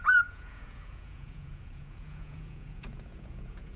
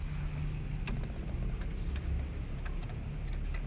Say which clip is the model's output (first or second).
first